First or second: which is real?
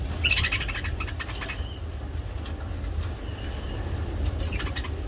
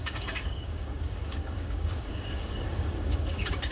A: first